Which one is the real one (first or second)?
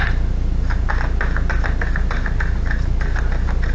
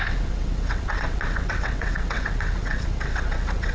first